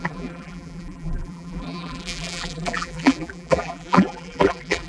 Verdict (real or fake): fake